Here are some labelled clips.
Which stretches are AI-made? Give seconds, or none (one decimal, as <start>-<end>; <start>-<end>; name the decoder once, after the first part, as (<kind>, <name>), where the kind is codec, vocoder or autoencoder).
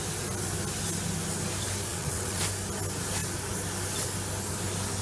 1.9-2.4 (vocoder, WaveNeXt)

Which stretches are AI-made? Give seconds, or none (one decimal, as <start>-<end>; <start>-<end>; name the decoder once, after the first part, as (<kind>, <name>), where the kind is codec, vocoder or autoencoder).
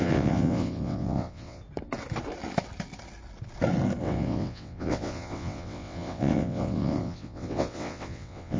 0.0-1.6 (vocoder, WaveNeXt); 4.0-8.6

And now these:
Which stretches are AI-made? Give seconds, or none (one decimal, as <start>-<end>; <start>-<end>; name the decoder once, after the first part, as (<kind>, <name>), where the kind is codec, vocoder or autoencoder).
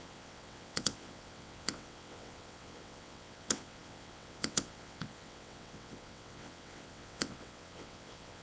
0.0-8.4 (vocoder, WaveNeXt)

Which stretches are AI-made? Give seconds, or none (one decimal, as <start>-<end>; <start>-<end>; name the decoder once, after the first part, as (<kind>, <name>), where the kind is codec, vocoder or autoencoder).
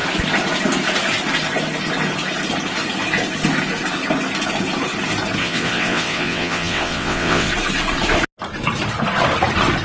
5.4-7.5 (vocoder, WaveNeXt)